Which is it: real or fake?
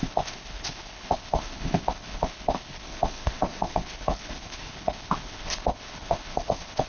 fake